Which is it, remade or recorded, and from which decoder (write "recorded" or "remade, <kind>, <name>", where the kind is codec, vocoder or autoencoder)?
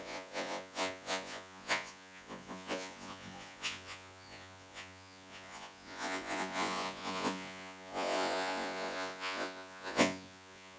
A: remade, vocoder, Vocos